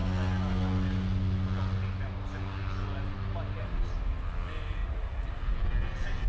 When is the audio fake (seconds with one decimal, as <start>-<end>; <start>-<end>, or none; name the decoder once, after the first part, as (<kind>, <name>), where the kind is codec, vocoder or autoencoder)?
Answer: 4.8-5.3 (vocoder, Vocos)